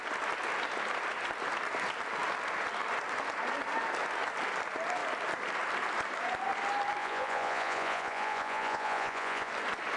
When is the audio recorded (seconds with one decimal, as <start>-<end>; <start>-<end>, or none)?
0.0-7.0; 9.5-10.0